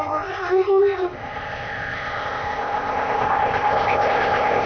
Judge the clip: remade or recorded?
remade